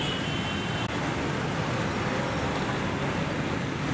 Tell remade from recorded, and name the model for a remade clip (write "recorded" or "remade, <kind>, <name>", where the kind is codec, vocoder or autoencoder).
recorded